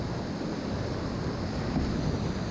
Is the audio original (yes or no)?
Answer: yes